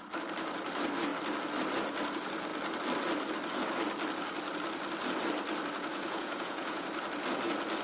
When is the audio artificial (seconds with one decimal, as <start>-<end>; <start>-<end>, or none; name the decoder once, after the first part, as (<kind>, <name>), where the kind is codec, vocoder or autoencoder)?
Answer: 5.9-6.9 (vocoder, Vocos)